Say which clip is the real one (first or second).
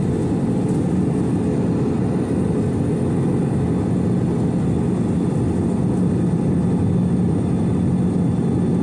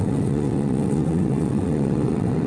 first